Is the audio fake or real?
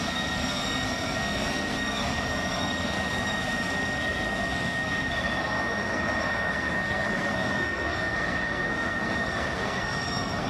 fake